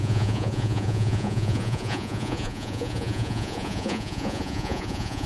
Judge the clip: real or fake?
fake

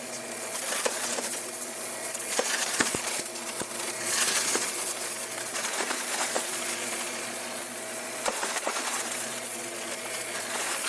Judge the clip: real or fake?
fake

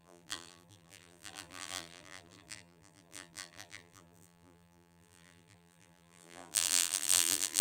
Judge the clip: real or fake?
fake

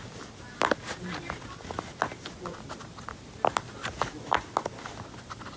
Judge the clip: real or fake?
real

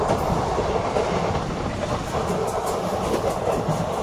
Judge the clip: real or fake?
real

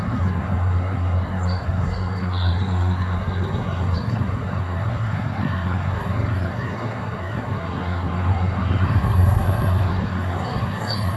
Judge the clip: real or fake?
fake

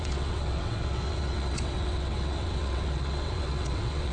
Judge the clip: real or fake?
fake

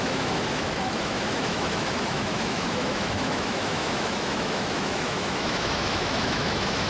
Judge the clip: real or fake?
fake